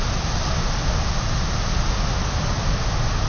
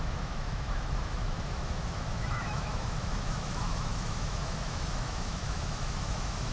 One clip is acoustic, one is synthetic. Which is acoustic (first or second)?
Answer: first